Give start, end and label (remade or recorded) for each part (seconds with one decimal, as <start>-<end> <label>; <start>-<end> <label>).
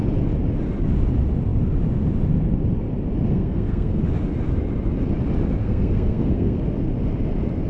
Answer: 0.0-3.3 recorded; 3.3-4.0 remade; 4.0-5.6 recorded; 5.6-6.6 remade; 6.6-7.7 recorded